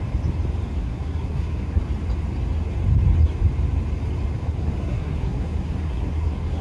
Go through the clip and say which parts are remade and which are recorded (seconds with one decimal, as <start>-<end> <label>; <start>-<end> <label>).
0.0-0.8 recorded; 0.8-1.8 remade; 1.8-4.5 recorded; 4.5-6.6 remade